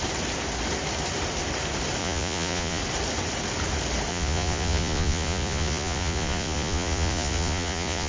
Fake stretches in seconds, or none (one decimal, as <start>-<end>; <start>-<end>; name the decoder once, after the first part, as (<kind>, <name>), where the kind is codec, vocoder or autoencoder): 2.0-2.8 (vocoder, Vocos); 4.1-8.1